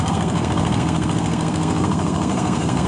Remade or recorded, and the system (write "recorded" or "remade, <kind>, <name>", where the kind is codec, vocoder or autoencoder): remade, codec, SNAC